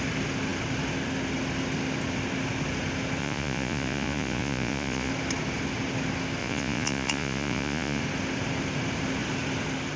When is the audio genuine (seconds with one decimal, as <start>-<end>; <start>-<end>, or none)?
0.0-3.2; 5.1-6.4; 8.0-10.0